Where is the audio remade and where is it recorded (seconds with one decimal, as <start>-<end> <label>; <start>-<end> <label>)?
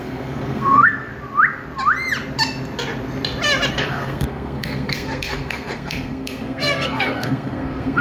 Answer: 0.0-1.1 remade; 1.1-3.7 recorded; 3.7-8.0 remade